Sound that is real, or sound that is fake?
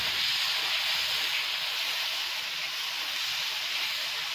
real